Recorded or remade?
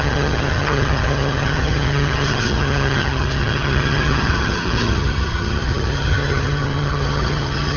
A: remade